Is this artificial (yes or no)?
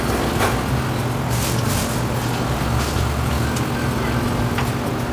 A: no